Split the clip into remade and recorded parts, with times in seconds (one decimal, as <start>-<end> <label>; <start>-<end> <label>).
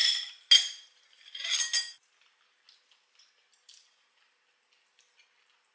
0.0-5.7 recorded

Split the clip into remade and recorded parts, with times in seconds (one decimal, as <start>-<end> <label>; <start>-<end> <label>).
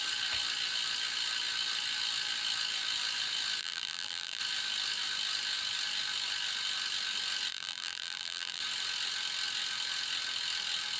0.0-3.6 recorded; 3.6-4.4 remade; 4.4-7.5 recorded; 7.5-8.6 remade; 8.6-11.0 recorded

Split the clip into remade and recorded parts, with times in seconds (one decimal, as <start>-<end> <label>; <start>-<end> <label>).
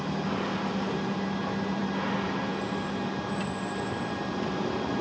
0.0-5.0 recorded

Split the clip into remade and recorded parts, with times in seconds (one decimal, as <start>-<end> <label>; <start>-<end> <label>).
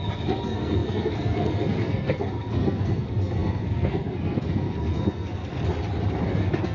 0.0-5.4 remade; 5.4-6.3 recorded; 6.3-6.7 remade